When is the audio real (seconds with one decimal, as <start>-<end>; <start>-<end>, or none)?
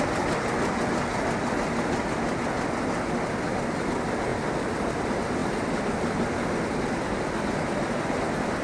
0.0-8.6